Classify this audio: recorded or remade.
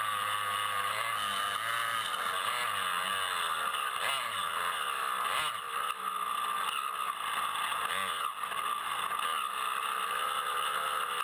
recorded